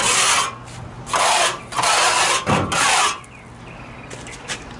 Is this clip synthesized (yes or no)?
no